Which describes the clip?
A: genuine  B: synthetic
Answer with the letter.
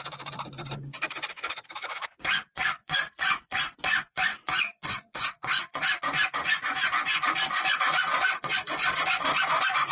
B